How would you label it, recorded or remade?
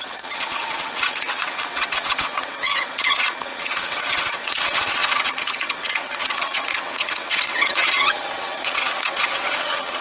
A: remade